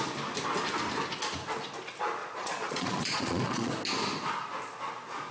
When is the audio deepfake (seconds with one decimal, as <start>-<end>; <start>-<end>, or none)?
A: 2.2-3.7